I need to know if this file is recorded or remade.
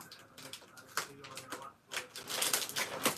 recorded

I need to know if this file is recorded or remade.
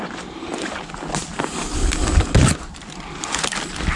recorded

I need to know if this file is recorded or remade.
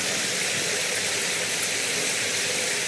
recorded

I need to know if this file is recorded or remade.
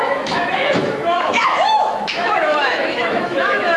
remade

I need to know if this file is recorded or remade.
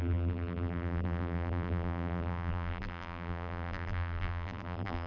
remade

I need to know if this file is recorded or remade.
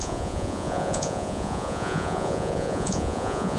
remade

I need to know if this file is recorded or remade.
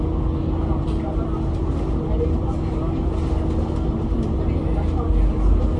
recorded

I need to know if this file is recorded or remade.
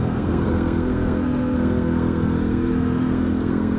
remade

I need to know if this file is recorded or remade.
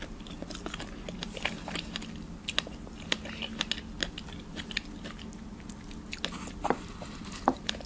recorded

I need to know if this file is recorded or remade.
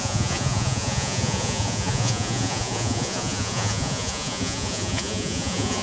remade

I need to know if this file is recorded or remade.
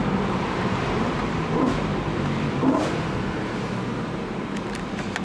remade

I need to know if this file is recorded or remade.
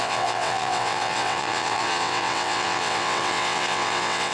remade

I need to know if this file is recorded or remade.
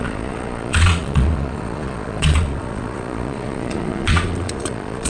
remade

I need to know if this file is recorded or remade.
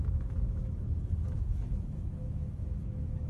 remade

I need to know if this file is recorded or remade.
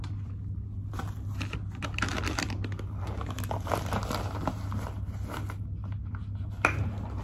recorded